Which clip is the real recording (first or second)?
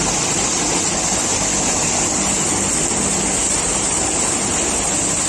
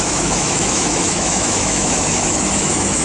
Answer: first